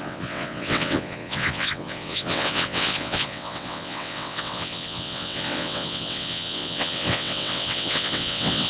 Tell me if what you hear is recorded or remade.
remade